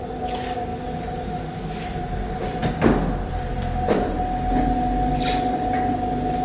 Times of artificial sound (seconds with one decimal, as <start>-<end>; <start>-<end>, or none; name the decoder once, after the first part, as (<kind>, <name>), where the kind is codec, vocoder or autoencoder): 0.7-1.4 (autoencoder, DAC-VAE)